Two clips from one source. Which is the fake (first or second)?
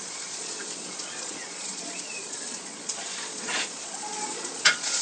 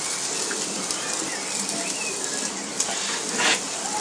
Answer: first